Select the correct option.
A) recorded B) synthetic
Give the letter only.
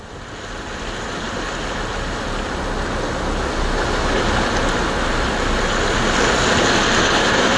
A